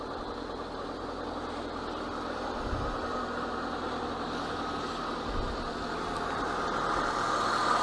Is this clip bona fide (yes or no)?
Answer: yes